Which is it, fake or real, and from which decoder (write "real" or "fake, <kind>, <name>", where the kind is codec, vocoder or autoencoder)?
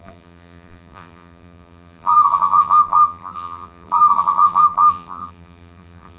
fake, vocoder, BigVGAN v2